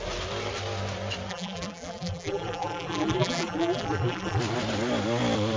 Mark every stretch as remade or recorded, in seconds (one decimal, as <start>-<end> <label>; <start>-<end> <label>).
0.0-1.3 recorded; 1.3-4.4 remade; 4.4-5.6 recorded